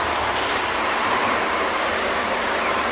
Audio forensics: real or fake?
fake